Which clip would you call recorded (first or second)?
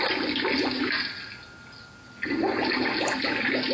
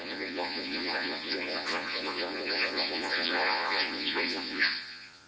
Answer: first